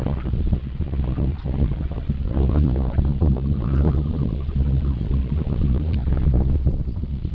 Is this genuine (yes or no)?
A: no